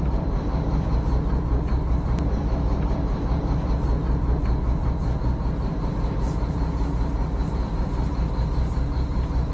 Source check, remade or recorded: remade